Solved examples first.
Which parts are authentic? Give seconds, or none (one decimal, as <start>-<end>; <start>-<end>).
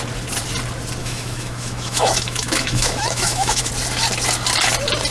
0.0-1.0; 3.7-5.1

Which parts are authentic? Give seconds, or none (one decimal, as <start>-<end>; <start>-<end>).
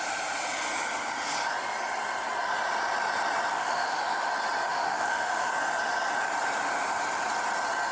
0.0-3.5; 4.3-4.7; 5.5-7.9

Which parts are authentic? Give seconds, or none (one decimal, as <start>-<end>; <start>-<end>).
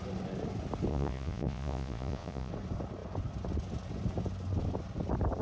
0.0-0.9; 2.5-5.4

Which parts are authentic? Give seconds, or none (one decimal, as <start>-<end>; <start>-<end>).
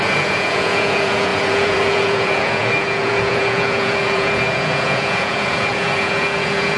none